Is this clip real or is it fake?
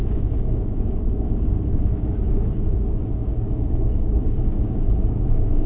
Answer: fake